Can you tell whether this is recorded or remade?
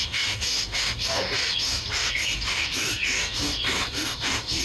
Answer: remade